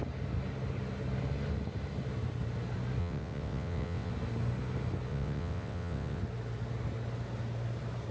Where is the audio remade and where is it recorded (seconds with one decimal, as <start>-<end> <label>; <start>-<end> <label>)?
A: 0.0-3.0 recorded; 3.0-4.1 remade; 4.1-5.1 recorded; 5.1-6.2 remade; 6.2-8.1 recorded